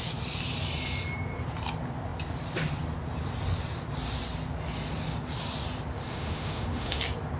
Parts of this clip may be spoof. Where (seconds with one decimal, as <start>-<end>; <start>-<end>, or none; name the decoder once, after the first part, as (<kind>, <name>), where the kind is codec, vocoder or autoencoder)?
6.1-7.0 (autoencoder, DAC-VAE)